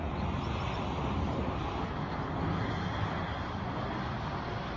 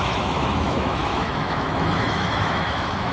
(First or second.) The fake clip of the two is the second